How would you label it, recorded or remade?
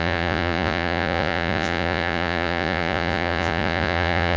remade